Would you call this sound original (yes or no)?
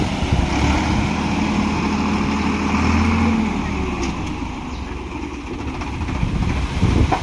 yes